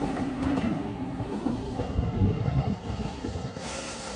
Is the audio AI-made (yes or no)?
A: yes